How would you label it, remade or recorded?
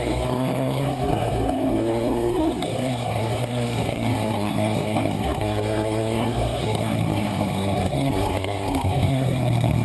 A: remade